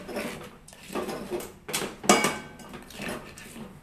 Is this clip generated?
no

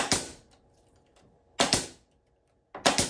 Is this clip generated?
no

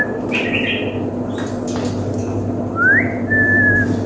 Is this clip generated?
no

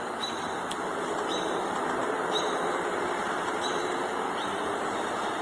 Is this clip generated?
yes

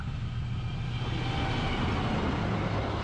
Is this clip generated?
no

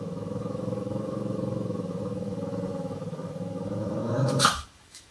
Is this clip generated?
yes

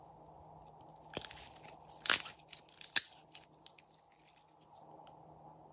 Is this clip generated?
no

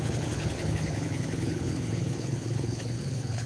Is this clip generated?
yes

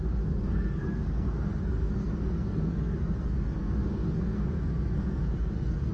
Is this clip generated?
yes